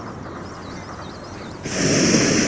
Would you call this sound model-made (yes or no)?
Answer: no